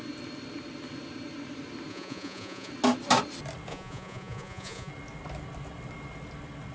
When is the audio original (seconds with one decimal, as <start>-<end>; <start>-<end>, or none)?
0.0-1.9; 2.7-3.7; 4.9-6.7